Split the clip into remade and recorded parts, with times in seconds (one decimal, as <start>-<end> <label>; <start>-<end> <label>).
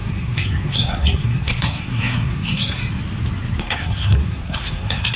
0.0-2.8 remade; 2.8-3.6 recorded; 3.6-5.2 remade